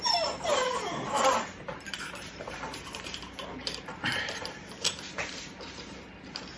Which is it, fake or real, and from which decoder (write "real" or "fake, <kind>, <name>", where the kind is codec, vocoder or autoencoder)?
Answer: fake, vocoder, BigVGAN v2